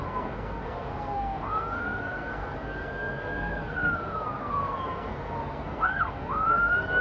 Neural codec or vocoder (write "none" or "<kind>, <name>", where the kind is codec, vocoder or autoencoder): codec, SNAC